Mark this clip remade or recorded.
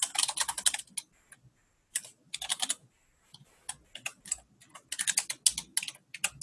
recorded